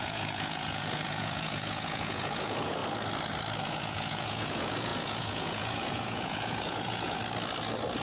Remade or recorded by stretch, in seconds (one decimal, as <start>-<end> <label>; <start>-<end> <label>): 0.0-2.8 remade; 2.8-3.6 recorded; 3.6-7.2 remade; 7.2-8.0 recorded